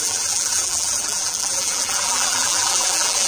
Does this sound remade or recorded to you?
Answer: remade